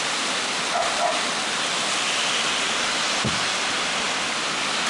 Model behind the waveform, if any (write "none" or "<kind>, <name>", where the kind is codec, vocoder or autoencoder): none